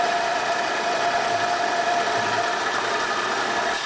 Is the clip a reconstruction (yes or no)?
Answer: yes